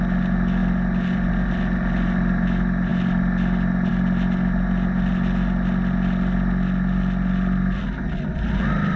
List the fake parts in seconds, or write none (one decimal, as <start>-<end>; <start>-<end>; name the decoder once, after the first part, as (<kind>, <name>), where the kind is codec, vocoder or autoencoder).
none